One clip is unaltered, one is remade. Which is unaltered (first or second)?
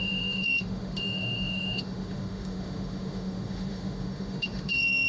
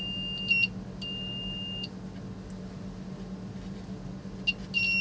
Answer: second